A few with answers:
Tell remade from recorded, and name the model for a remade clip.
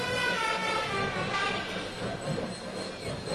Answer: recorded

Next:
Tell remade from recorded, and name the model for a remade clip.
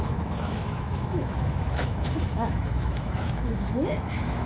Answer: remade, autoencoder, DAC-VAE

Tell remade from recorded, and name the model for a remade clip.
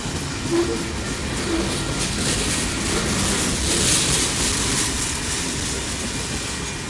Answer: recorded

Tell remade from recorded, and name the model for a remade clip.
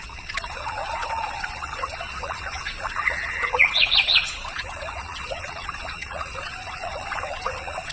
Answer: remade, vocoder, Vocos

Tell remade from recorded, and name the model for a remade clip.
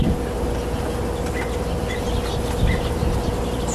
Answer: recorded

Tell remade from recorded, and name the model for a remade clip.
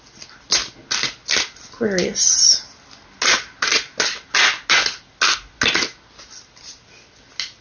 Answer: recorded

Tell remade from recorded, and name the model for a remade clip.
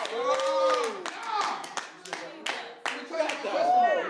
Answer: recorded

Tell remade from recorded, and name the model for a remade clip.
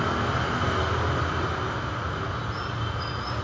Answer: recorded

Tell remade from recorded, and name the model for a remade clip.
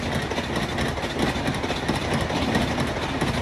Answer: recorded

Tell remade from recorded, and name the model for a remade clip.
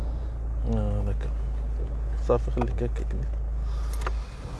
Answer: recorded